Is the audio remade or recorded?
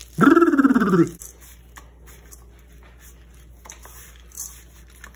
recorded